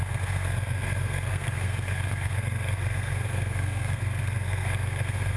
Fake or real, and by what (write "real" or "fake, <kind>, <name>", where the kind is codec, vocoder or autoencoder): fake, codec, SNAC